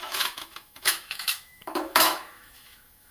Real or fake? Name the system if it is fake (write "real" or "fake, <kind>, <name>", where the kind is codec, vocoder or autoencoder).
fake, autoencoder, DAC-VAE